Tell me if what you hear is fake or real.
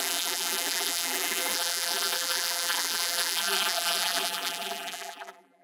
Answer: fake